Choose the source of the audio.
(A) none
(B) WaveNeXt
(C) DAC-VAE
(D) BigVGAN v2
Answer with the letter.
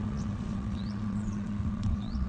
B